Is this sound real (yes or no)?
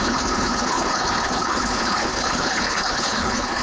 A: no